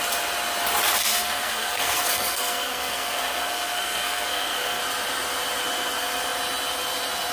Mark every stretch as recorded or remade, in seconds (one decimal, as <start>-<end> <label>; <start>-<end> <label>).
0.0-1.0 recorded; 1.0-4.8 remade; 4.8-7.3 recorded